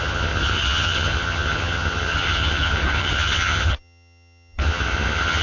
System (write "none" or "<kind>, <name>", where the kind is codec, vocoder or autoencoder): vocoder, HiFi-GAN